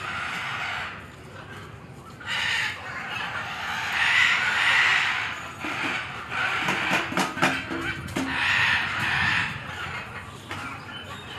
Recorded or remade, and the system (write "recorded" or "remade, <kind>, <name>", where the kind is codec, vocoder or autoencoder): recorded